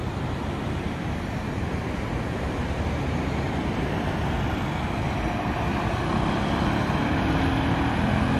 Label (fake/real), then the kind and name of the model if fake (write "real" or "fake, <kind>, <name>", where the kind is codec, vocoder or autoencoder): real